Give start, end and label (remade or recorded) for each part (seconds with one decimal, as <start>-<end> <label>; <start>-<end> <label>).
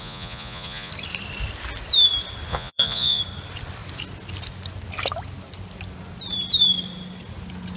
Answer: 0.0-0.9 remade; 0.9-2.5 recorded; 2.5-3.2 remade; 3.2-7.8 recorded